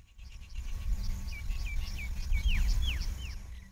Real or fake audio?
real